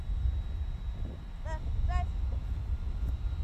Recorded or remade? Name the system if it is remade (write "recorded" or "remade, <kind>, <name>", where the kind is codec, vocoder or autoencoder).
recorded